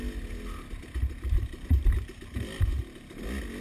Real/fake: real